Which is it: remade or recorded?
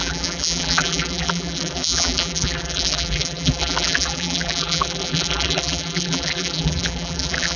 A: remade